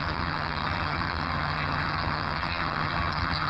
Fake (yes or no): yes